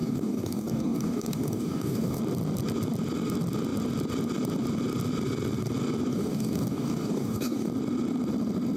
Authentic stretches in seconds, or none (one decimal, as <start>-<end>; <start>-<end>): 2.2-6.1; 7.7-8.8

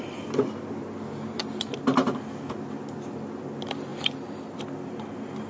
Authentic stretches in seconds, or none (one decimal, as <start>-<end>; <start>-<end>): 0.0-5.5

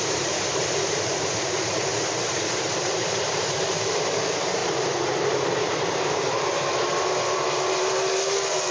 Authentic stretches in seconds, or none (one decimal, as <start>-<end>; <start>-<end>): none